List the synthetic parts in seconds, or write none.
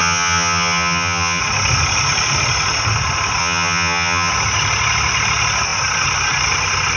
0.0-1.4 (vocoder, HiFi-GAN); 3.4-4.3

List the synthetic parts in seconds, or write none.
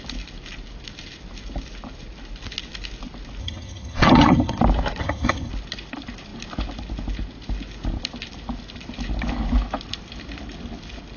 3.4-4.6 (vocoder, HiFi-GAN); 5.0-5.5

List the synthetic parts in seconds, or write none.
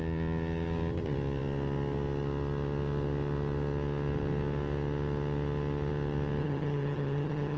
6.4-7.6 (vocoder, HiFi-GAN)